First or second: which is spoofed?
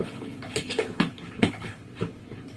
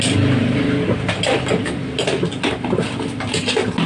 first